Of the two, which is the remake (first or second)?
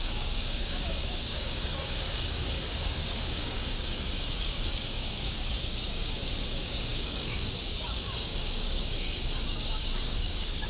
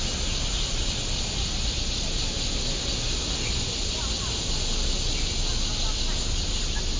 first